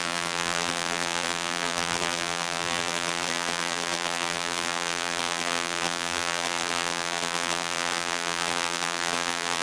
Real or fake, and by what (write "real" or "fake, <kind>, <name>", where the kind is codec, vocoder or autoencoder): fake, vocoder, BigVGAN v2